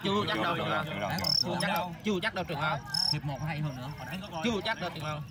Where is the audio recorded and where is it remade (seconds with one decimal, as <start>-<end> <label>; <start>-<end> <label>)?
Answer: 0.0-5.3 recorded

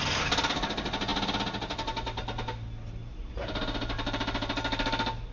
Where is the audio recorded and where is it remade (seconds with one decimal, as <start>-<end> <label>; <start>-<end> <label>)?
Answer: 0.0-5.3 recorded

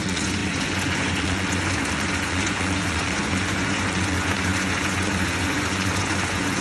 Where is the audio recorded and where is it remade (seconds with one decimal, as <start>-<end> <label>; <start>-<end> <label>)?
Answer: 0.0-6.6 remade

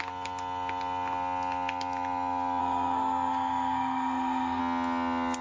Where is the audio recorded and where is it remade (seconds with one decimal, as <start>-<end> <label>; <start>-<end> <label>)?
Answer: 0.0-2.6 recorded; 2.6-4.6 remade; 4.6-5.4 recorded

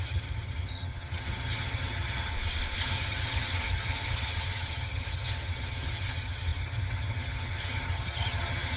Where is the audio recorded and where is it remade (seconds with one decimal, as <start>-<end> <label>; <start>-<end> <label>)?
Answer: 0.0-2.3 remade; 2.3-2.8 recorded; 2.8-8.8 remade

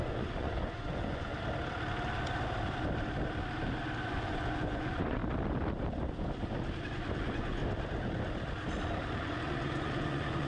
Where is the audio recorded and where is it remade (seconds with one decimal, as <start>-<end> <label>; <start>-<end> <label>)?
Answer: 0.0-1.3 remade; 1.3-4.1 recorded; 4.1-5.2 remade; 5.2-6.9 recorded; 6.9-7.6 remade; 7.6-9.2 recorded; 9.2-10.5 remade

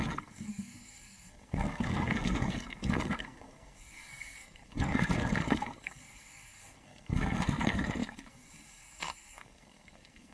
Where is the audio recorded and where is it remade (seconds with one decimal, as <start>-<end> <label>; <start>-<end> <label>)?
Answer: 0.0-10.3 remade

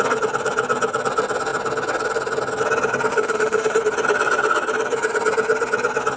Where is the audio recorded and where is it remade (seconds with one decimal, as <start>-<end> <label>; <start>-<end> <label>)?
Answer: 0.0-3.1 recorded; 3.1-3.8 remade; 3.8-6.2 recorded